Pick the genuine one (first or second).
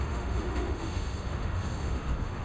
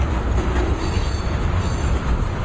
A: second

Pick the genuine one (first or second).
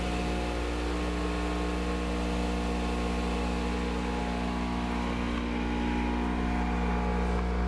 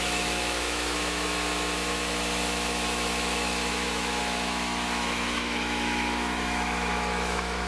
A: first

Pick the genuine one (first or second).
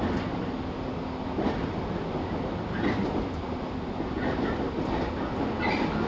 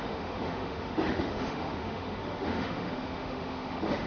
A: first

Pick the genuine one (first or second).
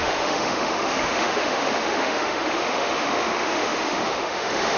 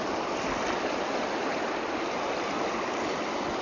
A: second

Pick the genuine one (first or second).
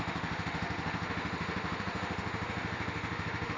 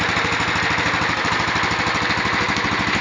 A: second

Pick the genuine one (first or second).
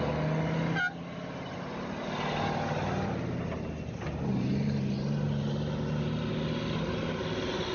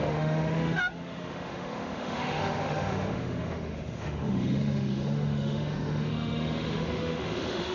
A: first